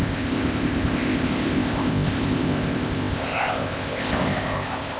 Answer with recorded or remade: remade